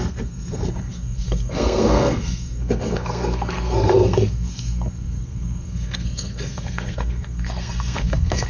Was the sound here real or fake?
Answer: fake